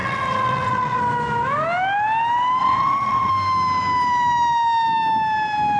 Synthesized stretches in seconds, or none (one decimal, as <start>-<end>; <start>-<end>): 0.0-1.0; 2.6-3.3

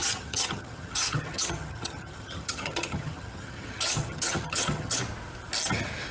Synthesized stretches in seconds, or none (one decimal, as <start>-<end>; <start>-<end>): 0.0-5.0